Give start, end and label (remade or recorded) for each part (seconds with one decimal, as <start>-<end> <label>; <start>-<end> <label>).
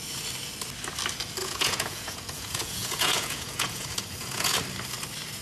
0.0-1.4 recorded; 1.4-4.6 remade; 4.6-5.4 recorded